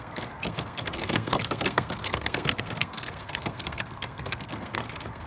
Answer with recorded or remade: remade